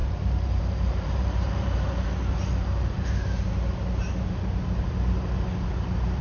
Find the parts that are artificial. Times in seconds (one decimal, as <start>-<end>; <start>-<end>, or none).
0.0-3.5